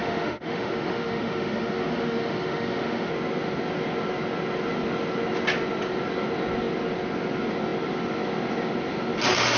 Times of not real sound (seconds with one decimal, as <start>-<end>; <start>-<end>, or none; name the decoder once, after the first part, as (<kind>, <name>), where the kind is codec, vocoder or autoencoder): 0.0-3.1 (autoencoder, DAC-VAE)